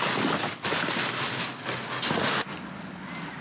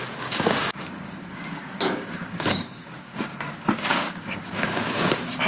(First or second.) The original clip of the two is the first